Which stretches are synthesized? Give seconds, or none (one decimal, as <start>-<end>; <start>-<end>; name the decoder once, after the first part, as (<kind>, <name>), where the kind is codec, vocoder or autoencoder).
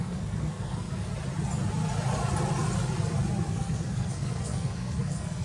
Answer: 0.0-1.1 (codec, SNAC); 3.5-5.4